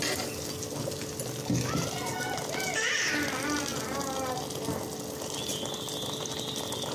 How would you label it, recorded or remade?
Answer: recorded